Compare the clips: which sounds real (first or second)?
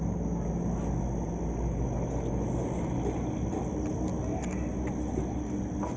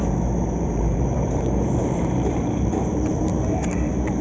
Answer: first